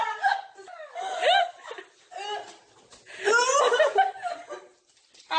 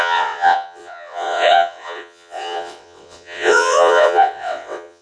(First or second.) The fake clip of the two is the second